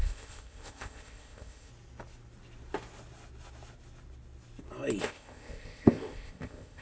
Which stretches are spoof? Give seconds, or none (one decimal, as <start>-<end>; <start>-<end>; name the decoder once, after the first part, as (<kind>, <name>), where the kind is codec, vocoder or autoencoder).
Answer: 0.0-1.7 (codec, ZipCodec); 5.0-6.8